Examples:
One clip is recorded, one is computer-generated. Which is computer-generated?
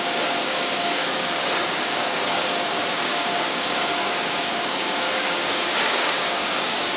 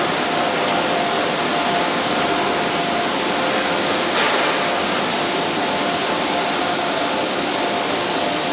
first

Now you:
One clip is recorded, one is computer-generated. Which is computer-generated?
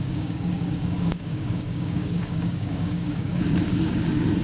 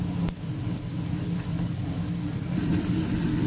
first